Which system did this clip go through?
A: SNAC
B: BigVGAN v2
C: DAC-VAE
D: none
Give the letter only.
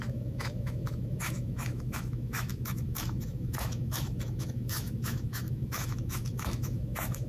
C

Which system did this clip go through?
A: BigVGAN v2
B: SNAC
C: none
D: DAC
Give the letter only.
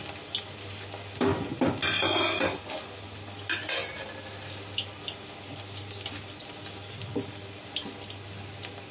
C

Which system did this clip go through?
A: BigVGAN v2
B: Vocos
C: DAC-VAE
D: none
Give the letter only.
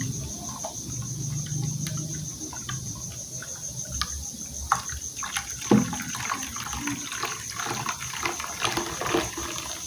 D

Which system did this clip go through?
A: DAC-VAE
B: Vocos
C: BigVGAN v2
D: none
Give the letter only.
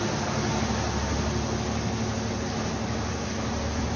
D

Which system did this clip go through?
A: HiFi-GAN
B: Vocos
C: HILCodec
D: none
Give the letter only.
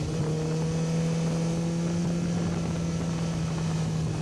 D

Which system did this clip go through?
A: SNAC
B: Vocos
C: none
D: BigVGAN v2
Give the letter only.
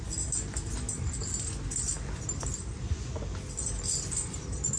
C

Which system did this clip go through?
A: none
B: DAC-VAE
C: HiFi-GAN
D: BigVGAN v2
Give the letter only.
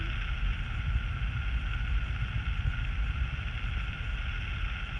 A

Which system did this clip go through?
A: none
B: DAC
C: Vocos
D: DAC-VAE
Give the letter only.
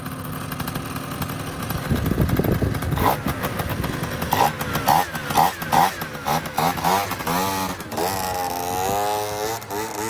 A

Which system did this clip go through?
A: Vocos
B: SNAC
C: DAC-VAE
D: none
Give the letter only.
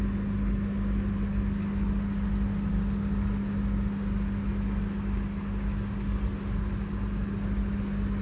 D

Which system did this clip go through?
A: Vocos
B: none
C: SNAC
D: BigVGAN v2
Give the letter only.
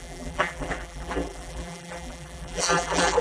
D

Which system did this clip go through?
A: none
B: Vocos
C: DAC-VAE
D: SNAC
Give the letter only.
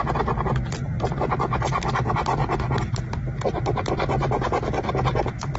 A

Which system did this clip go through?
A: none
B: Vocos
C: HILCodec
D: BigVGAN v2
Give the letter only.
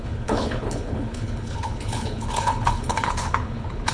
C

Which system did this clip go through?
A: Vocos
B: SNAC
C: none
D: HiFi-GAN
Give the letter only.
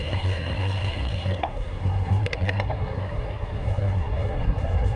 B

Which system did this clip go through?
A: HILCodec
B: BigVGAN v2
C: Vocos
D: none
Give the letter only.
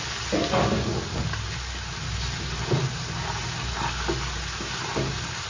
D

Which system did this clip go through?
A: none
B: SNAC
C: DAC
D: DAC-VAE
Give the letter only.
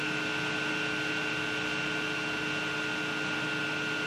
A